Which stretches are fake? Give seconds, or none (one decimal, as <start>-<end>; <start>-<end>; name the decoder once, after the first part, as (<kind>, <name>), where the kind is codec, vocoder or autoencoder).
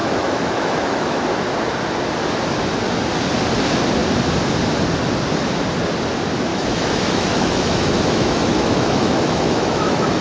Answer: 0.0-1.2 (autoencoder, DAC-VAE); 6.5-10.2